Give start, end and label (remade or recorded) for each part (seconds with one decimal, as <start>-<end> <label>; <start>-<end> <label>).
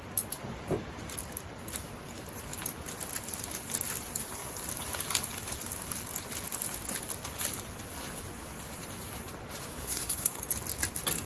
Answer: 0.0-9.8 recorded; 9.8-10.4 remade; 10.4-11.3 recorded